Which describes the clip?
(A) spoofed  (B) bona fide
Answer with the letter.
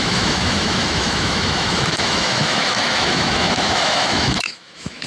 A